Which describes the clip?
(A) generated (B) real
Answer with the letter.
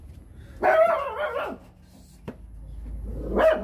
B